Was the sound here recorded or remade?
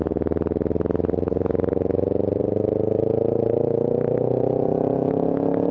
recorded